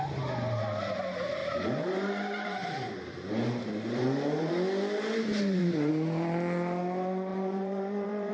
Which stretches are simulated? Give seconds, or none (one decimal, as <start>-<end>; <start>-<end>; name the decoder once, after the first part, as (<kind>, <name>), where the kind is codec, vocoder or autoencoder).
1.4-4.5 (vocoder, BigVGAN v2); 5.3-5.9; 7.3-8.3